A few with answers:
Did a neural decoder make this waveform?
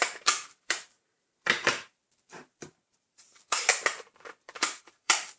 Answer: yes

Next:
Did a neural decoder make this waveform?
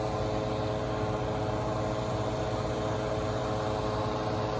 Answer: no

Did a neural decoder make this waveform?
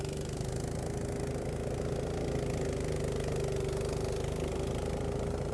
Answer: no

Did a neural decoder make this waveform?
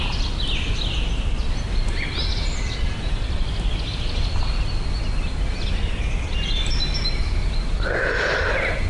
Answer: no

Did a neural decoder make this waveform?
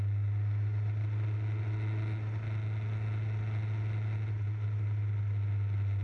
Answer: no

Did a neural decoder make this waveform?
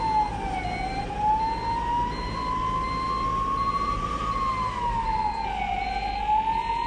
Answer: no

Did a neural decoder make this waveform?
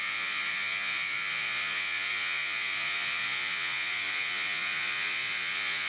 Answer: yes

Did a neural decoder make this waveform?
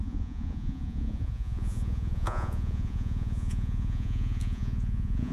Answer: yes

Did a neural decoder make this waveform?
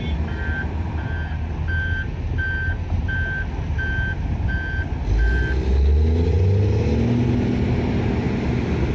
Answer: no